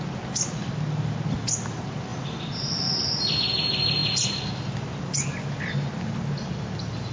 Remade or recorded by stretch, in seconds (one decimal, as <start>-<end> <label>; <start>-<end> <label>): 0.0-7.1 recorded